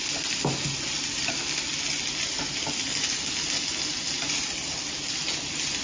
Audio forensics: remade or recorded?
recorded